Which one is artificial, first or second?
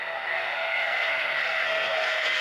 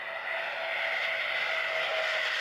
first